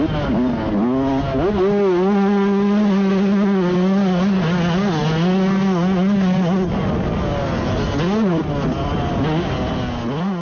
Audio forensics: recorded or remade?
recorded